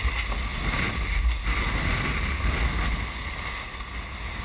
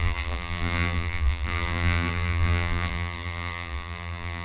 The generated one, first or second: second